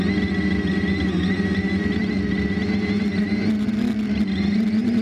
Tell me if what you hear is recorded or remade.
recorded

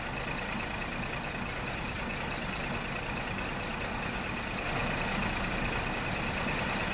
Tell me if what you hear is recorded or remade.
recorded